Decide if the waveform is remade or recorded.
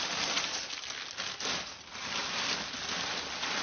recorded